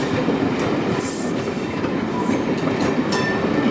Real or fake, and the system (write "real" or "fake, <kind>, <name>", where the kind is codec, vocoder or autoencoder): real